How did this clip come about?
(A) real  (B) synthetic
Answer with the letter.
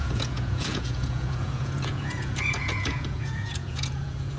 B